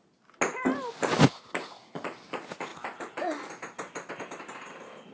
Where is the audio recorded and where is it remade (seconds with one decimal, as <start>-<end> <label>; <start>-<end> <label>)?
0.0-5.1 recorded